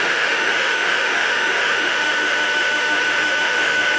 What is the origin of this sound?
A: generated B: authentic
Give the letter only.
A